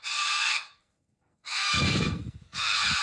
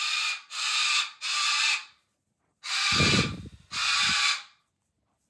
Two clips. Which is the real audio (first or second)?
second